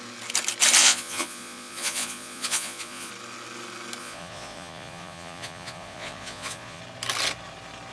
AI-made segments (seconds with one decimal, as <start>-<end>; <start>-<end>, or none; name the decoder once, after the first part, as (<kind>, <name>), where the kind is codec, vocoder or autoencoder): 0.8-3.1 (vocoder, Vocos); 4.0-6.8